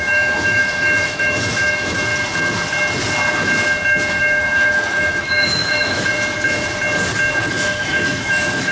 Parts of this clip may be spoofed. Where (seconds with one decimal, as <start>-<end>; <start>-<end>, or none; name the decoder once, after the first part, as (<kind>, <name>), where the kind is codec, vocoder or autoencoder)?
0.0-2.1 (autoencoder, DAC-VAE); 4.2-6.1; 7.5-8.7